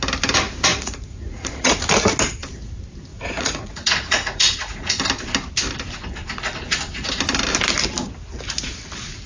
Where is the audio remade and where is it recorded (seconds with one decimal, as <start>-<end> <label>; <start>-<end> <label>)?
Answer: 0.0-0.7 recorded; 0.7-1.9 remade; 1.9-3.1 recorded; 3.1-5.0 remade; 5.0-9.3 recorded